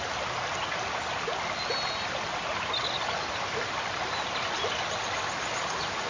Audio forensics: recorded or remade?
recorded